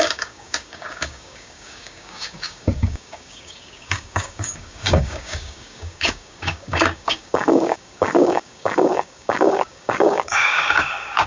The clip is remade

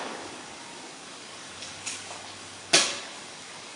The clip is remade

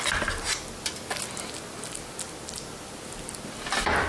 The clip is recorded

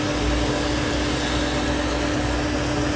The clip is recorded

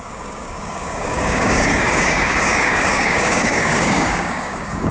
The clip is remade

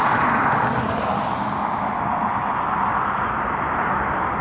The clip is recorded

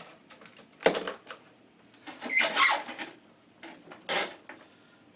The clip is recorded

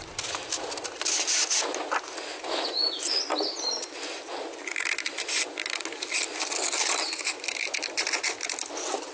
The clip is recorded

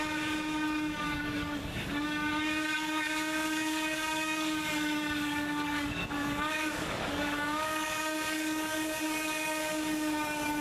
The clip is remade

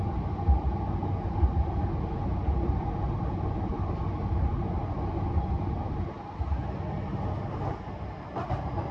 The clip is recorded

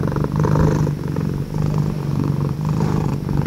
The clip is recorded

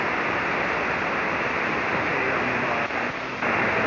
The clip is recorded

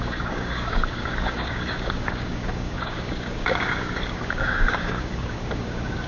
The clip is remade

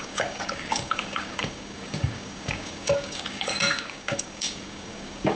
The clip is remade